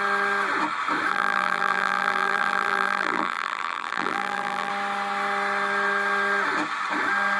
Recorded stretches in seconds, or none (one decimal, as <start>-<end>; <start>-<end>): 0.0-1.1; 4.7-7.4